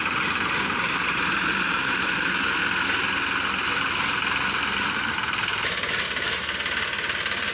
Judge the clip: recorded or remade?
recorded